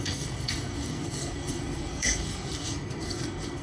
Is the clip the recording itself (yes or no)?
no